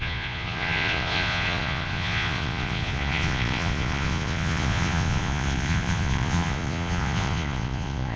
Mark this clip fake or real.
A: fake